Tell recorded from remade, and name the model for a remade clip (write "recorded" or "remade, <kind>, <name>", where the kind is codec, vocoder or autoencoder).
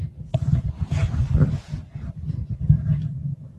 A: recorded